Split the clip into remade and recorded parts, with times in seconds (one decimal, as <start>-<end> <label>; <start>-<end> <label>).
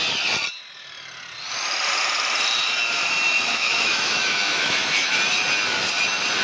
0.0-3.5 recorded; 3.5-5.2 remade; 5.2-6.4 recorded